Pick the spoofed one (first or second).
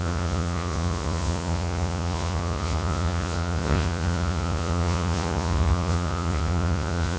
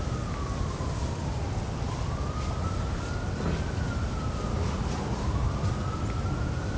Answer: first